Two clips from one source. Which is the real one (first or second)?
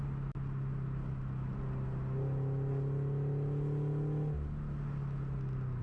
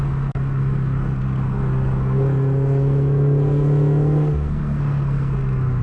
first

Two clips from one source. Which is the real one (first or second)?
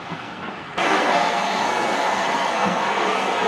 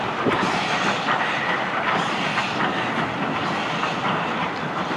second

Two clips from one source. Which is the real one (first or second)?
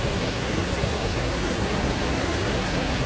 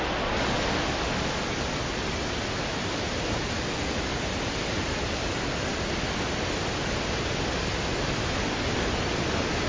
second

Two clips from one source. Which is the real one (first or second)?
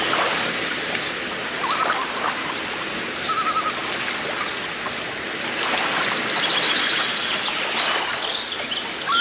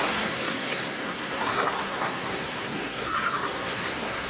first